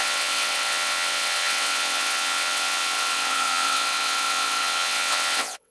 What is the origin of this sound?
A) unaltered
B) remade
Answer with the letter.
B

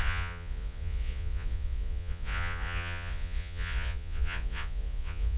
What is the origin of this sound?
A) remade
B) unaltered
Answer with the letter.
A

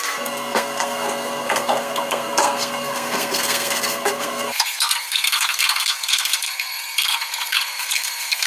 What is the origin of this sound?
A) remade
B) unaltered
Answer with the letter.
A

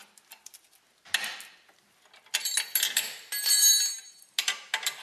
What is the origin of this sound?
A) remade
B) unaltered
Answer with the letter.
B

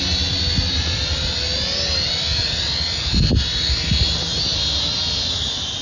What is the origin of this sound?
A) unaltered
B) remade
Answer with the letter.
A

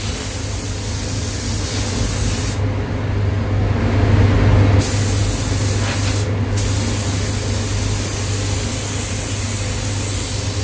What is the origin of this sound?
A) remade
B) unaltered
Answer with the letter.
B